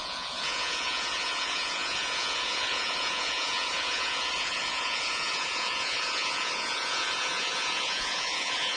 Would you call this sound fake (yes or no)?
yes